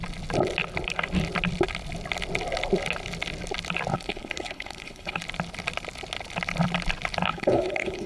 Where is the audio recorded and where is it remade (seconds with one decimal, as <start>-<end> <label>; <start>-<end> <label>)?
0.0-3.9 recorded; 3.9-5.2 remade; 5.2-7.3 recorded; 7.3-8.1 remade